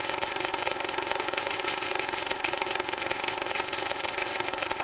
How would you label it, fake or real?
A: fake